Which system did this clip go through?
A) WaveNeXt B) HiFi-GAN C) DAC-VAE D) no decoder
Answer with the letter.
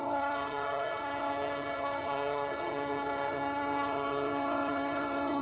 B